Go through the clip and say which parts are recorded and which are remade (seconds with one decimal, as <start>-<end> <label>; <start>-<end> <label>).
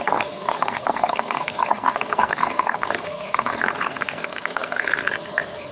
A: 0.0-5.7 remade